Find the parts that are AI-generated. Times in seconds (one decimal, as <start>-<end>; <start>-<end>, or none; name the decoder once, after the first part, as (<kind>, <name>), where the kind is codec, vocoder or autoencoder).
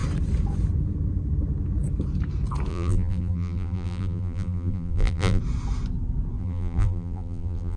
2.7-5.4 (vocoder, BigVGAN v2); 6.4-7.8